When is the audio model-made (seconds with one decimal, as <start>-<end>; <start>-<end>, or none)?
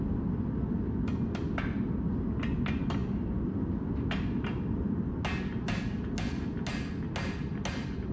none